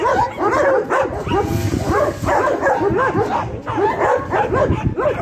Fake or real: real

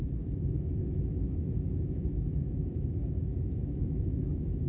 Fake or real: fake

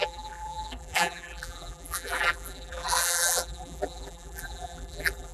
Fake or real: fake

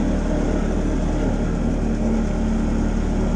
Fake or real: real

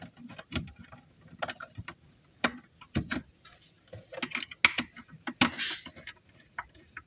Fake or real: real